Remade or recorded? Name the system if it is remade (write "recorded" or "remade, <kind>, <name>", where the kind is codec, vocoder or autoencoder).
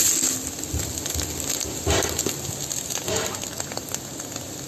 recorded